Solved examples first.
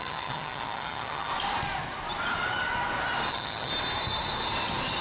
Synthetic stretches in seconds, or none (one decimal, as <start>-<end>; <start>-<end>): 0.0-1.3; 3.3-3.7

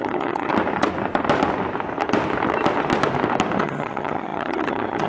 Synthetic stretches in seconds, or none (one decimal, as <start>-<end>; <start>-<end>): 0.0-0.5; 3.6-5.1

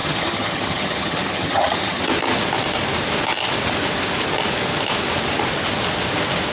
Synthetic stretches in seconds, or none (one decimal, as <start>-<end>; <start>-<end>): 0.0-2.0

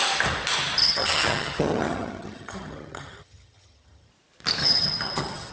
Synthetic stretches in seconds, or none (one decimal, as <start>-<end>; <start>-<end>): 0.8-4.1; 4.6-5.5

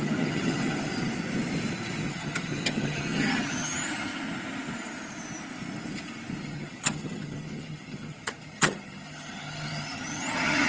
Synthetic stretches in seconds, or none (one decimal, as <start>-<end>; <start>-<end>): 0.0-0.9; 2.1-4.1; 6.4-10.7

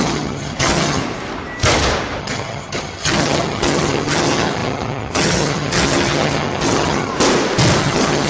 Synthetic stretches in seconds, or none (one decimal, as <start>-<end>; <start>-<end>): 0.0-1.0; 2.2-7.1; 7.8-8.3